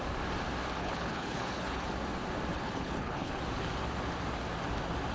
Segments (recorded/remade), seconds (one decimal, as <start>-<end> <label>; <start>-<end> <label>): 0.0-0.8 recorded; 0.8-1.9 remade; 1.9-2.5 recorded; 2.5-3.4 remade; 3.4-5.1 recorded